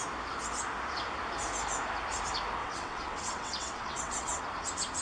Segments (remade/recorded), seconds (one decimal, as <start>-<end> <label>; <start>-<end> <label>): 0.0-2.6 recorded; 2.6-4.4 remade; 4.4-5.0 recorded